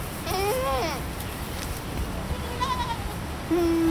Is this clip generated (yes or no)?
no